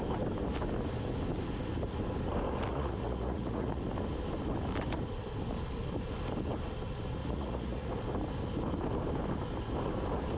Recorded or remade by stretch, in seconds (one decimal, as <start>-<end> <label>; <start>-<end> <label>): 0.0-2.7 recorded; 2.7-3.8 remade; 3.8-7.2 recorded; 7.2-7.9 remade; 7.9-10.4 recorded